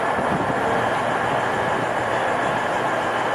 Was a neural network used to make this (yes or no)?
no